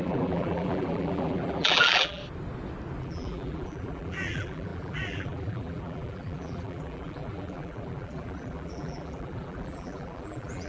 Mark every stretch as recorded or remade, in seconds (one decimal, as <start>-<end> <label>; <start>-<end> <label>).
0.0-2.2 remade; 2.2-3.0 recorded; 3.0-10.7 remade